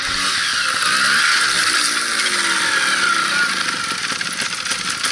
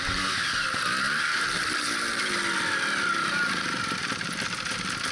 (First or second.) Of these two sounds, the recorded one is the first